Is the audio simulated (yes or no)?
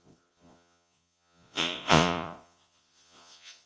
yes